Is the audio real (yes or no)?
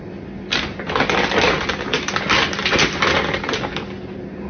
yes